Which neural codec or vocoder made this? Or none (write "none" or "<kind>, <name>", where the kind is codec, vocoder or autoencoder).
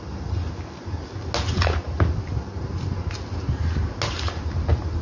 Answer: none